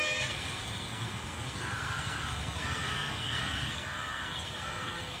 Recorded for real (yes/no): no